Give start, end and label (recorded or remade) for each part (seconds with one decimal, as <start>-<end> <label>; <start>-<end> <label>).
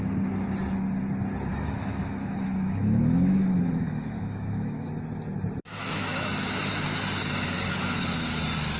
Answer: 0.0-1.5 recorded; 1.5-4.9 remade; 4.9-5.8 recorded; 5.8-6.3 remade; 6.3-8.8 recorded